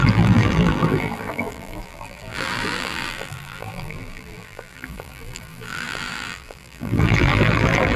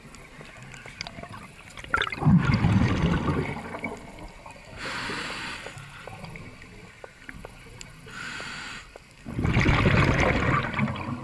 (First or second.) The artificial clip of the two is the first